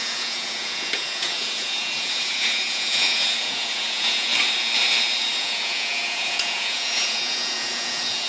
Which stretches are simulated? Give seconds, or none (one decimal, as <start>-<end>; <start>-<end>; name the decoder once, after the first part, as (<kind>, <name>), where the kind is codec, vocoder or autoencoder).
0.0-4.3 (vocoder, Vocos); 5.4-8.3